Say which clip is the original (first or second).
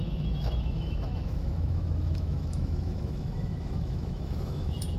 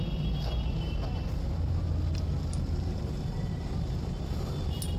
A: second